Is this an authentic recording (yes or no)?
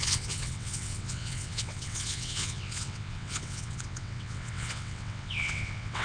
no